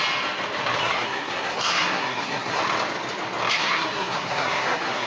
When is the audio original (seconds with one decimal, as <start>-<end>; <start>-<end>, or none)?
0.0-0.8; 2.6-3.5